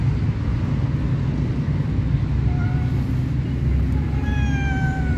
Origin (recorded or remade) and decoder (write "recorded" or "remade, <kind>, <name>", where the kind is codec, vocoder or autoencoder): recorded